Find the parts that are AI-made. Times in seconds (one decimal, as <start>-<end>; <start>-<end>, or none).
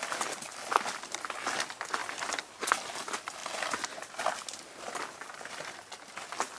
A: none